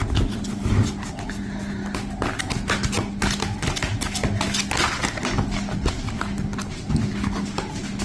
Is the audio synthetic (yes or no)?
no